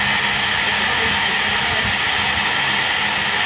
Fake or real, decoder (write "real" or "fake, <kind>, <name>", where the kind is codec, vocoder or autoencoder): real